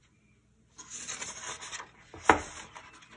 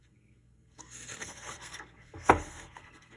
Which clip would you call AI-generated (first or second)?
second